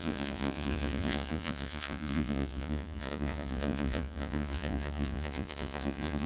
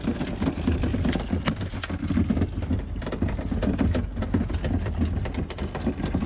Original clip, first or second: second